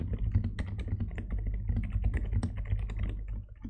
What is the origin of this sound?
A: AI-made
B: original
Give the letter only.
B